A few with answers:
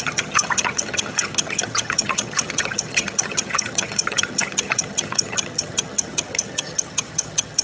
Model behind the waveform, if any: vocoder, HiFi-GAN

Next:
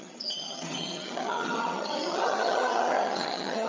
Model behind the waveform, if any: vocoder, HiFi-GAN